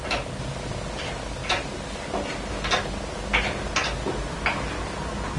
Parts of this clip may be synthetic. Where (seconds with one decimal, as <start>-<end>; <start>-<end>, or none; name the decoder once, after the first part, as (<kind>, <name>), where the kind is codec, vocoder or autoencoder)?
none